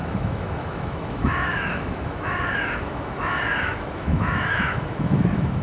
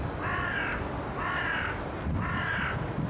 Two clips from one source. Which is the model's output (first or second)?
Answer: first